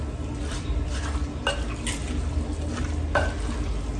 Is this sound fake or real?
real